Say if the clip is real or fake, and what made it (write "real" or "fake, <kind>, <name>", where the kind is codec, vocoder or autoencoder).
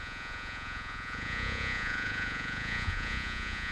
fake, vocoder, Vocos